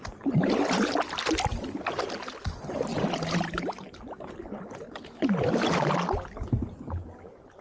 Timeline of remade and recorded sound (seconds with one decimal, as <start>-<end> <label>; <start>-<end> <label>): 0.0-7.6 recorded

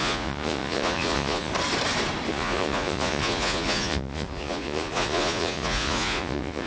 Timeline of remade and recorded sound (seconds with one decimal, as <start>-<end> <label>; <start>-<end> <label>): 0.0-1.5 remade; 1.5-2.3 recorded; 2.3-6.7 remade

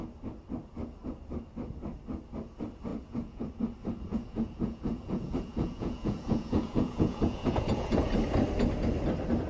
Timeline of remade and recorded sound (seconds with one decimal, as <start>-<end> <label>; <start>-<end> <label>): 0.0-2.9 recorded; 2.9-3.5 remade; 3.5-4.1 recorded; 4.1-8.1 remade; 8.1-9.5 recorded

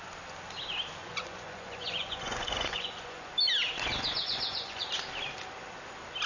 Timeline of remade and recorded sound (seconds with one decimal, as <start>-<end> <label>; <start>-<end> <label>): 0.0-1.0 recorded; 1.0-3.3 remade; 3.3-3.9 recorded; 3.9-4.9 remade; 4.9-6.3 recorded

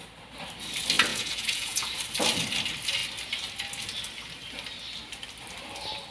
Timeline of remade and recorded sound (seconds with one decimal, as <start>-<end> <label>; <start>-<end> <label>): 0.0-1.1 recorded; 1.1-2.0 remade; 2.0-6.1 recorded

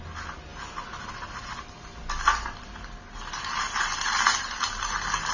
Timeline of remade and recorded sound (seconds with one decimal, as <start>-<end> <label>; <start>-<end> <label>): 0.0-5.3 recorded

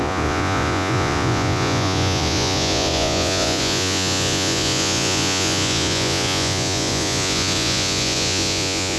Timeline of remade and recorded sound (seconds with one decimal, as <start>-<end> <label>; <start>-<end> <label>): 0.0-9.0 remade

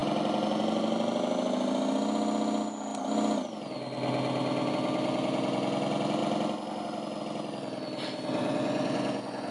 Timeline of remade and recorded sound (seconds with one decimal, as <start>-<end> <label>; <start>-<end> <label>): 0.0-8.4 recorded; 8.4-9.5 remade